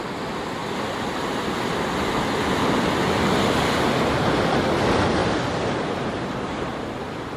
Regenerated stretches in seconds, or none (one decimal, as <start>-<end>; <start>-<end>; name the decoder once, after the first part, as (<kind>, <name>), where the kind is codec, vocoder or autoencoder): 3.0-4.4 (vocoder, BigVGAN v2); 5.2-6.8